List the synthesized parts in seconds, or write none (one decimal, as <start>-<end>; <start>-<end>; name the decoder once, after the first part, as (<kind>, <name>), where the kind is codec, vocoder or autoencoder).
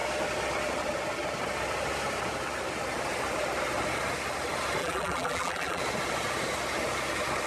4.8-5.8 (vocoder, BigVGAN v2)